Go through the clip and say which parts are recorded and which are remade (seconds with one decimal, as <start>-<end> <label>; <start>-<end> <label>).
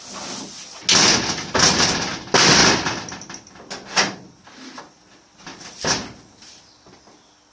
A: 0.0-7.5 recorded